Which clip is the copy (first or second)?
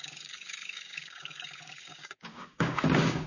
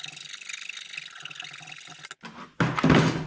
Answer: first